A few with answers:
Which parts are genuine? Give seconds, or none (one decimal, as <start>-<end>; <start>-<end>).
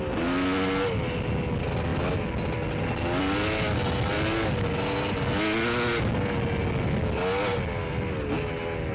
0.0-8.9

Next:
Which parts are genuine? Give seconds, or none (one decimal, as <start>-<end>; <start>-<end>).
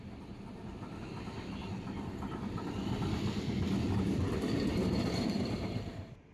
0.0-4.8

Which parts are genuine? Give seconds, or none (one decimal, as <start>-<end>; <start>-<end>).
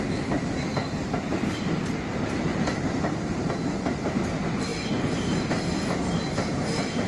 0.0-2.5; 3.5-7.1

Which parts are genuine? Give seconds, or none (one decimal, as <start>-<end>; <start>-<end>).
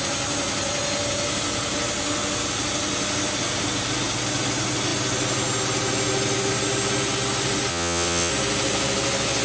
0.0-7.7; 8.3-9.4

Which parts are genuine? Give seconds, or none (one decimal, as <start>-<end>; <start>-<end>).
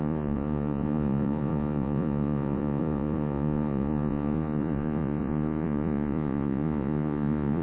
none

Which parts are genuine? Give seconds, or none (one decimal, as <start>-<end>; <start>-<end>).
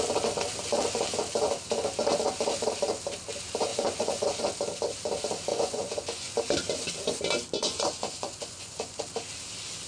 0.0-3.7; 4.4-5.5; 6.3-7.6; 9.0-9.9